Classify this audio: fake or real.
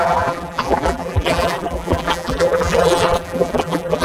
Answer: fake